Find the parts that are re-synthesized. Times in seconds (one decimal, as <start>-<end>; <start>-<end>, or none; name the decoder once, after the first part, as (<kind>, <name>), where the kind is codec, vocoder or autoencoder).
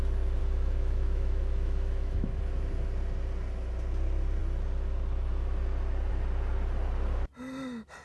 0.4-2.4 (autoencoder, DAC-VAE)